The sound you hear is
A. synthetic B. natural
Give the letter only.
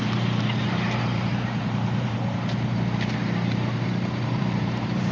A